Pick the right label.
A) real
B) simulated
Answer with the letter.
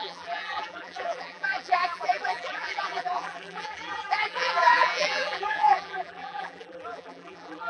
B